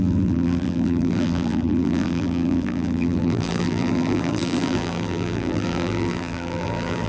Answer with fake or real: fake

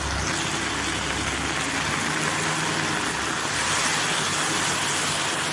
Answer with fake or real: real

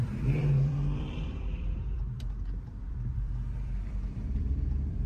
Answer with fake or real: fake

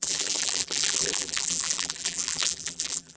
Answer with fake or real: fake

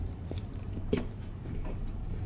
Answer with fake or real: fake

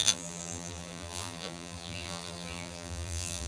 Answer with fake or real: fake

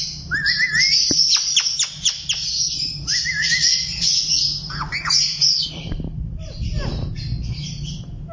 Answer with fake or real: real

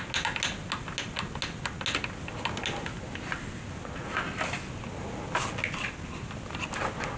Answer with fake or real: real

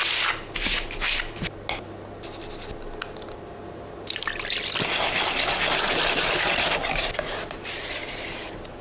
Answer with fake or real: real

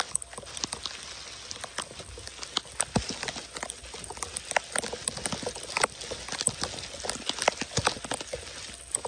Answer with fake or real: real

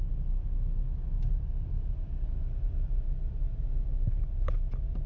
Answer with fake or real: real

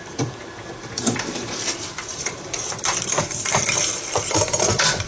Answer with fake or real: fake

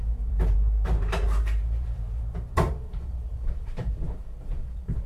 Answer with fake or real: fake